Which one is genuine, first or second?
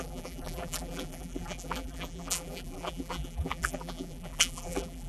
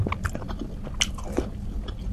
second